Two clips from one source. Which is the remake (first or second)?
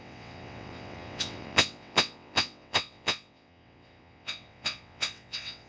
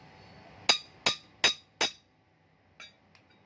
first